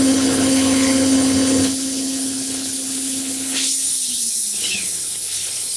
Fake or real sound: fake